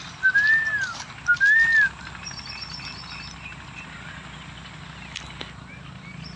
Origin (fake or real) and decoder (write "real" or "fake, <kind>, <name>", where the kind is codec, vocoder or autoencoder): real